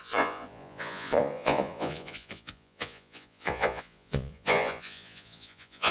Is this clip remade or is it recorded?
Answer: remade